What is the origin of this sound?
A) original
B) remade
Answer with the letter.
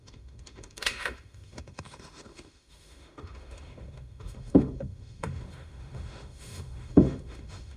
B